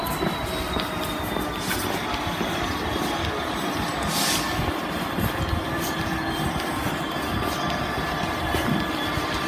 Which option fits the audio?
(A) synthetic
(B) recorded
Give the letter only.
B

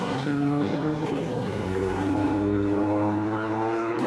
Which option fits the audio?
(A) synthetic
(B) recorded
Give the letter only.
A